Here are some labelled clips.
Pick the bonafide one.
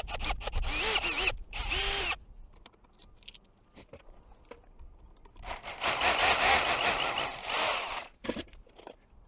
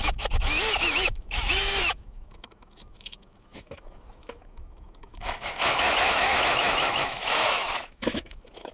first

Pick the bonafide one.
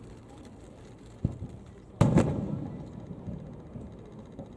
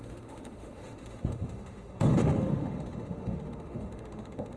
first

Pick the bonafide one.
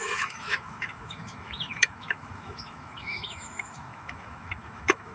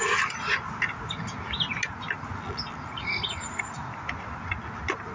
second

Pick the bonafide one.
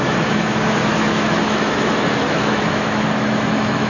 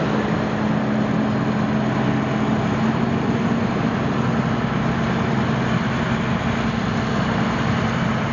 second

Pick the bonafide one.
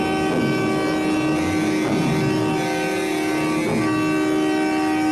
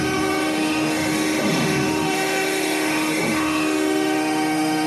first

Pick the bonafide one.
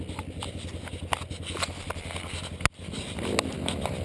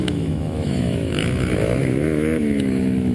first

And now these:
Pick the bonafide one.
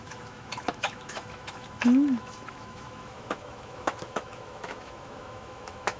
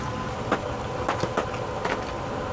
second